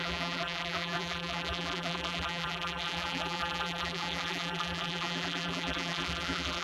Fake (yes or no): yes